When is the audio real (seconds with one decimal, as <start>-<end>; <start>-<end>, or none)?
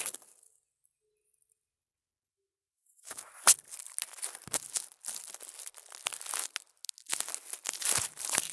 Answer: 0.0-2.3; 3.3-8.5